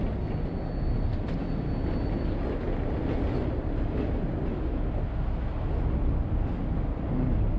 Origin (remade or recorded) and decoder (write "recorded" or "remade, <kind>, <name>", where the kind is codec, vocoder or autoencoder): recorded